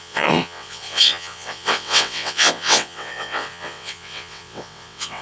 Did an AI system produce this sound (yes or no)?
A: yes